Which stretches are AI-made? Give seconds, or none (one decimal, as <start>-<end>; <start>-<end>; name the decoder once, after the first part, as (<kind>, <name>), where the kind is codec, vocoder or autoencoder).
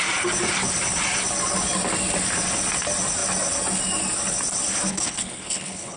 4.9-6.0 (codec, HILCodec)